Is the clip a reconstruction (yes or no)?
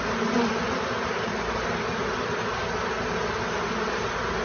no